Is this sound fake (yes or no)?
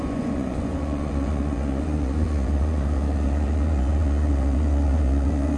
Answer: yes